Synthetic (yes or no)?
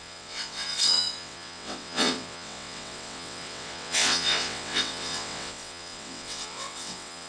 yes